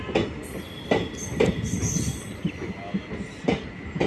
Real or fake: real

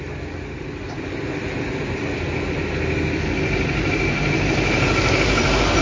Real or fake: real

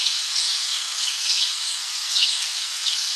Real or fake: fake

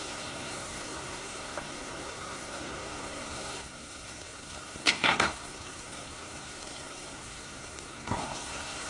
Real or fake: fake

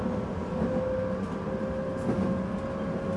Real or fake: real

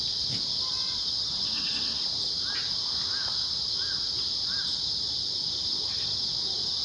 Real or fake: real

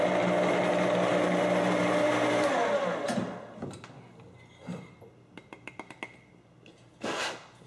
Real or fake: real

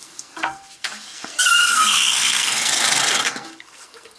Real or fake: fake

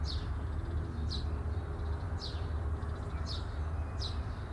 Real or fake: real